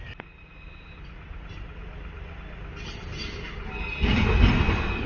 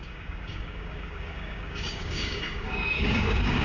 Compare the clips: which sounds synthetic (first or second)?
second